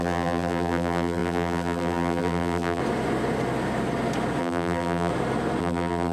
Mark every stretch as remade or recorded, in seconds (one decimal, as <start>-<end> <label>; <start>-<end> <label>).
0.0-2.8 remade; 2.8-4.4 recorded; 4.4-5.1 remade; 5.1-5.6 recorded; 5.6-6.1 remade